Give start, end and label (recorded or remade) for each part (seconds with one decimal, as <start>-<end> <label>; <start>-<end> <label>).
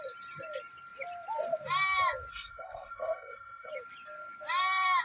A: 0.0-2.3 recorded; 2.3-3.7 remade; 3.7-5.0 recorded